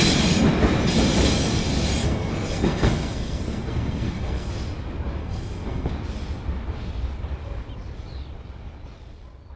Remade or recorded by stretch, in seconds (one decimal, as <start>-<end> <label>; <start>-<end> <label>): 0.0-2.0 recorded; 2.0-4.5 remade; 4.5-5.2 recorded; 5.2-5.9 remade; 5.9-9.6 recorded

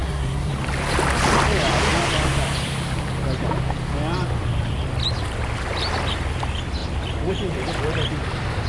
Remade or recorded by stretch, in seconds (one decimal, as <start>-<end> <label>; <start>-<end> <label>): 0.0-0.5 remade; 0.5-8.7 recorded

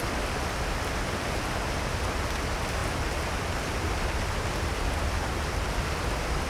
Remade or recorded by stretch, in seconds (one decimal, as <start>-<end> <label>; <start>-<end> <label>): 0.0-6.5 recorded